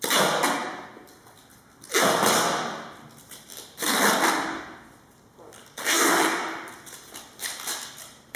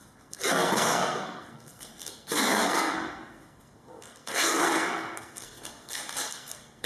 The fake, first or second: second